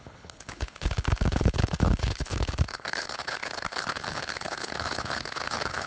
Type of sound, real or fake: fake